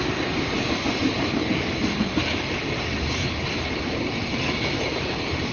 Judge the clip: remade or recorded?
remade